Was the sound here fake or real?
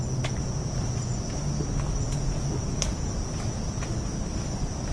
real